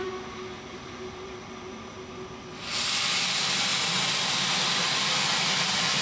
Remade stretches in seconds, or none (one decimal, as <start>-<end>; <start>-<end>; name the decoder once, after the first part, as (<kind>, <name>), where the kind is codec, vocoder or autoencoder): 0.0-3.7 (vocoder, BigVGAN v2); 4.4-6.0